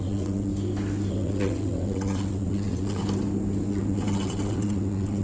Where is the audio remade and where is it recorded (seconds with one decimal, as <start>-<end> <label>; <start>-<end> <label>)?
0.0-0.5 remade; 0.5-1.1 recorded; 1.1-3.0 remade; 3.0-3.7 recorded; 3.7-5.2 remade